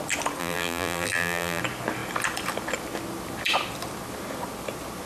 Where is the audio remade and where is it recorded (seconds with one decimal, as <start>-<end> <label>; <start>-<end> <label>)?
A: 0.0-0.4 recorded; 0.4-1.6 remade; 1.6-5.1 recorded